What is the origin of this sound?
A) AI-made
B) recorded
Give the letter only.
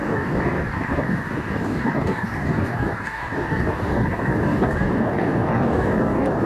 A